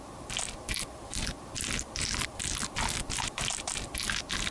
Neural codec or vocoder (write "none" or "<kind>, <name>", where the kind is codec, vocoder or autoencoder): none